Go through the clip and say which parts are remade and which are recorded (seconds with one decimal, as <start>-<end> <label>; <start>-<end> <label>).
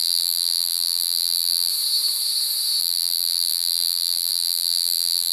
0.0-1.7 remade; 1.7-2.8 recorded; 2.8-5.3 remade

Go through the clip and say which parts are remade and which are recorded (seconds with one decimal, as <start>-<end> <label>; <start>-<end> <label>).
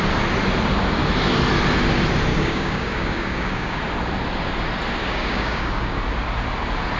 0.0-2.3 recorded; 2.3-3.8 remade; 3.8-5.0 recorded; 5.0-6.0 remade; 6.0-7.0 recorded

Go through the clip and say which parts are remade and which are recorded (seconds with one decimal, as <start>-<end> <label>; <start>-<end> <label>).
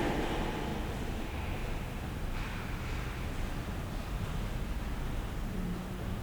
0.0-0.7 remade; 0.7-1.2 recorded; 1.2-1.6 remade; 1.6-5.3 recorded; 5.3-6.2 remade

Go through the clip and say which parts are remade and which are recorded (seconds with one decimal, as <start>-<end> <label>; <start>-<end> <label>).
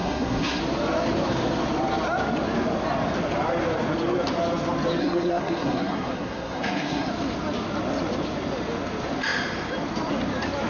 0.0-0.6 remade; 0.6-5.0 recorded; 5.0-7.1 remade; 7.1-10.7 recorded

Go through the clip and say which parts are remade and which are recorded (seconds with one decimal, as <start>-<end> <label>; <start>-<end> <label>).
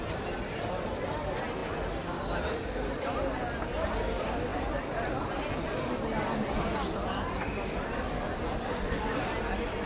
0.0-9.9 recorded